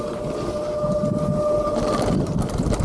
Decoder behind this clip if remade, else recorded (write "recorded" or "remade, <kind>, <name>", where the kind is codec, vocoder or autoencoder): recorded